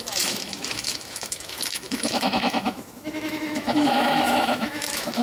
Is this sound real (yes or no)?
no